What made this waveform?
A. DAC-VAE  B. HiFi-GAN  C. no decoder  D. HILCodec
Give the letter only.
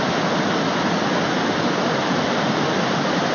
C